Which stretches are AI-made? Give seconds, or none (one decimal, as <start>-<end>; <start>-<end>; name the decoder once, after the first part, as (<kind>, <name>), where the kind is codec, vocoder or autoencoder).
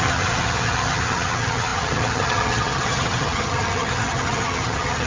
0.0-5.1 (vocoder, HiFi-GAN)